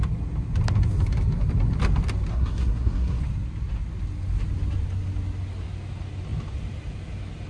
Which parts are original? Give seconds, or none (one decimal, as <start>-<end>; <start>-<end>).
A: 0.0-2.3; 3.2-7.5